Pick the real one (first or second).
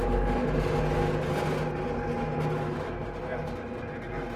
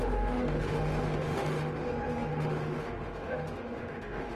first